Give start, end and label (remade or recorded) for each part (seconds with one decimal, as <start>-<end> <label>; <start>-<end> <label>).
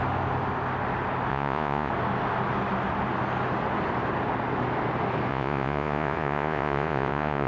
0.0-1.3 recorded; 1.3-1.9 remade; 1.9-5.3 recorded; 5.3-7.5 remade